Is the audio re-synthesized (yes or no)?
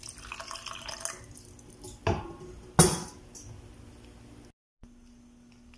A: no